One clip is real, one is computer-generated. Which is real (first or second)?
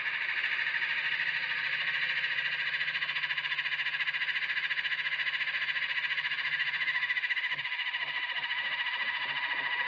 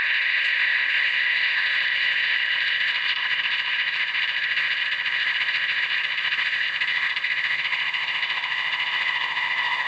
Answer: first